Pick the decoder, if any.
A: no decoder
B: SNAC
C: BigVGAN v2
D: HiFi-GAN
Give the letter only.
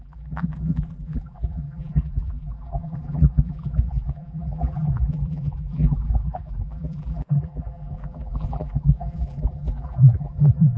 C